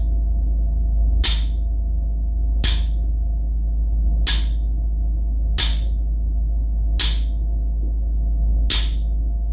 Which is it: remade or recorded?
recorded